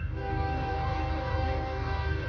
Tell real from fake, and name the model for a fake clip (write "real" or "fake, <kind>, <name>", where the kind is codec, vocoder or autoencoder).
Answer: fake, codec, DAC